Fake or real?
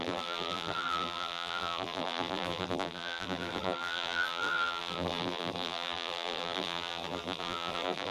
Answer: fake